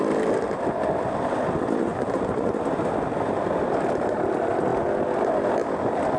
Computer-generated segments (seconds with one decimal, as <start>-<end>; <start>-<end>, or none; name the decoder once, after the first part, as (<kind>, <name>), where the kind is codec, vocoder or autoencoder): 1.8-2.5 (vocoder, Vocos)